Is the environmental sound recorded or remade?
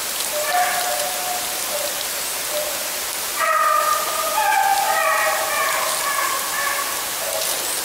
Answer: recorded